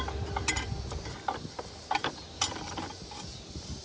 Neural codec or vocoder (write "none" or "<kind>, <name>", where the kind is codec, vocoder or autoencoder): none